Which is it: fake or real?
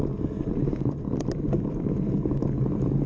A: real